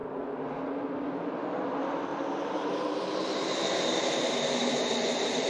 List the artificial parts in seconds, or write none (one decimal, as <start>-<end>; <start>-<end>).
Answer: 2.1-5.5

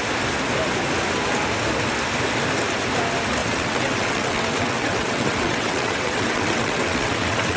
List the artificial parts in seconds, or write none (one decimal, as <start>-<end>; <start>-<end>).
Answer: 3.4-7.6

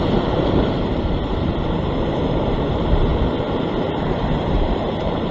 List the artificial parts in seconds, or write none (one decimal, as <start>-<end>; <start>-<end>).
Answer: 0.0-3.1; 3.8-5.3

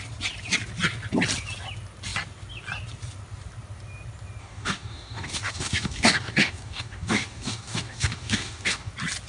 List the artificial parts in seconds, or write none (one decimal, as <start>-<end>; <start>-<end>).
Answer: 4.4-8.9

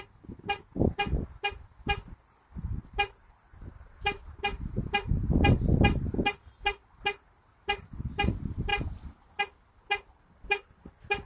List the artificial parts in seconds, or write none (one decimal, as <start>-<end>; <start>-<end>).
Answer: none

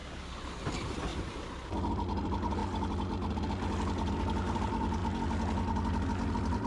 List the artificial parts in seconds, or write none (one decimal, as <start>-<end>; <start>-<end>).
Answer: 0.7-1.1; 1.9-2.6; 4.1-5.0; 6.3-6.7